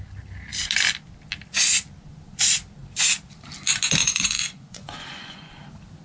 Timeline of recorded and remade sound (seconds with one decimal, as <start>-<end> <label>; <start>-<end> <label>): 0.0-4.0 recorded; 4.0-5.5 remade; 5.5-6.0 recorded